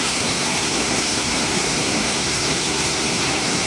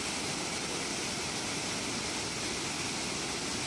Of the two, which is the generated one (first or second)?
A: first